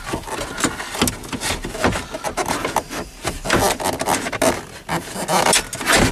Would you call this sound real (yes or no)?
yes